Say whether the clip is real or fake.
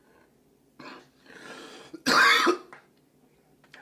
real